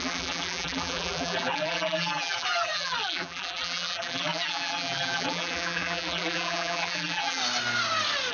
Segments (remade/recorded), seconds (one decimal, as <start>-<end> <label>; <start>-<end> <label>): 0.0-7.4 remade; 7.4-8.3 recorded